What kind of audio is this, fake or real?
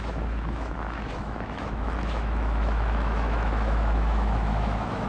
fake